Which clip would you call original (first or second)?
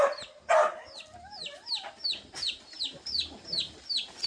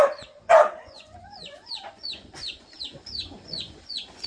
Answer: first